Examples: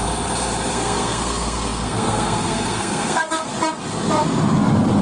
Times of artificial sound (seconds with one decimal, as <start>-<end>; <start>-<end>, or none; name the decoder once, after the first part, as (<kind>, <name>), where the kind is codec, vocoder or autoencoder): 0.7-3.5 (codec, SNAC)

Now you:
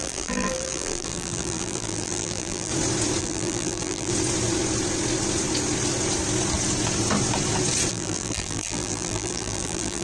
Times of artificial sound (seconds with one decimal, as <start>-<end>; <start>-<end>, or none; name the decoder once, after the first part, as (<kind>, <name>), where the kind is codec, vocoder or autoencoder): 0.0-2.7 (vocoder, BigVGAN v2); 3.2-4.1; 7.9-10.0

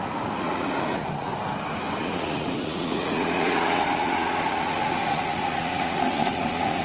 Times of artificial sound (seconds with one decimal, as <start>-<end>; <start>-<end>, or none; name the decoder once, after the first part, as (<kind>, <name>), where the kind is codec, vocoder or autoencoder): 0.0-1.3 (vocoder, Vocos); 2.0-6.8

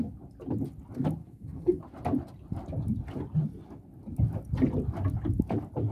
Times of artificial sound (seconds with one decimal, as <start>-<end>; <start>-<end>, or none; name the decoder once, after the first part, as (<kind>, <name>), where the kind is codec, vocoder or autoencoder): 1.2-1.8 (codec, SNAC)

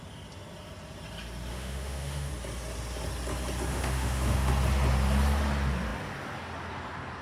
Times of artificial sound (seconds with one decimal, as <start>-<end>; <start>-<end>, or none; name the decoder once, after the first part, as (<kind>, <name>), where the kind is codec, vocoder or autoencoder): 1.5-2.3 (autoencoder, DAC-VAE); 3.7-4.5

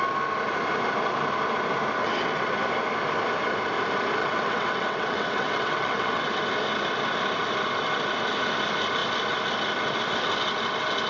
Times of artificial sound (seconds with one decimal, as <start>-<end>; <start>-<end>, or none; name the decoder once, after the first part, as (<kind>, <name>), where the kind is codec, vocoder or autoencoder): 2.0-2.5 (vocoder, WaveNeXt); 4.2-6.4

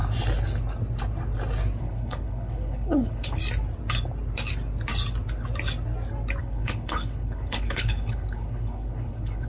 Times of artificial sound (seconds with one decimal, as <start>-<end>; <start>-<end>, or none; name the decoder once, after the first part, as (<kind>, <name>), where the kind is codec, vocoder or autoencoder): 1.8-3.4 (codec, HILCodec); 6.4-9.5

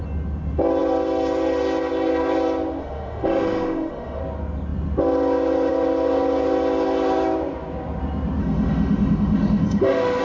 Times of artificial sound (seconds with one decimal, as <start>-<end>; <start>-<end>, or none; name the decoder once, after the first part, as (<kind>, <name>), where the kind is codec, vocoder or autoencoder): 2.8-4.2 (autoencoder, DAC-VAE); 8.4-10.2